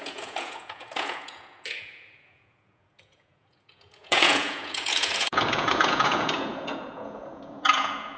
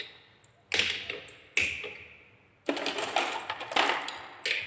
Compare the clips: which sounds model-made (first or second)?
first